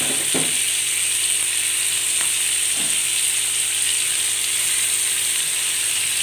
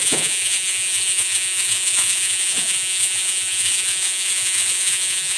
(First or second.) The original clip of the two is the first